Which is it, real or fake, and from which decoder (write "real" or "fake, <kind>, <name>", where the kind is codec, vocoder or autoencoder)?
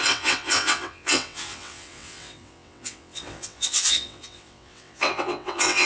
fake, vocoder, WaveNeXt